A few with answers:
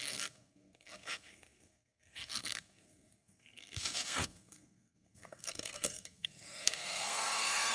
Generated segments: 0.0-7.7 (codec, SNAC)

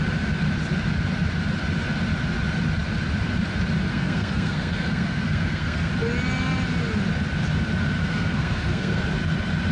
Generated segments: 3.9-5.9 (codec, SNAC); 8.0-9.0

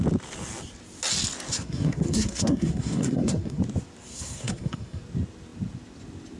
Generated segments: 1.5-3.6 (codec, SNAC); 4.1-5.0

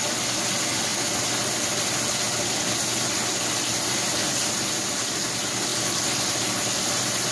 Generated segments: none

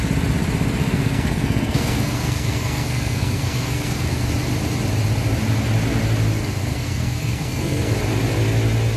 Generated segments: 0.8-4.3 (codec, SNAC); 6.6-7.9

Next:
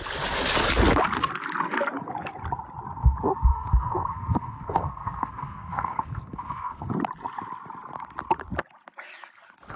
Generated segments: 3.5-6.9 (codec, SNAC)

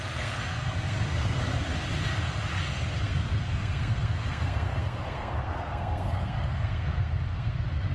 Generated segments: 0.0-1.4 (codec, SNAC); 3.0-7.9

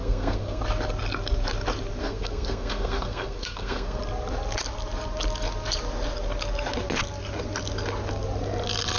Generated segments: 0.0-0.6 (codec, SNAC); 2.0-4.0